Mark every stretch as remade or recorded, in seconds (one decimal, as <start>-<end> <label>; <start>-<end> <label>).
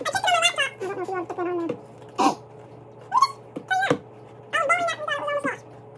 0.0-6.0 recorded